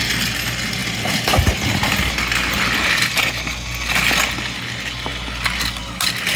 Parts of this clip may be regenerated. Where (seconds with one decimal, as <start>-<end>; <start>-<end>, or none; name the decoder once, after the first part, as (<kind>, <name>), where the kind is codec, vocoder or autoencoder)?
none